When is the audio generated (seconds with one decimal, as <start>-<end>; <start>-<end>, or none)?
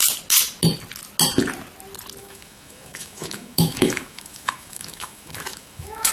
2.2-6.1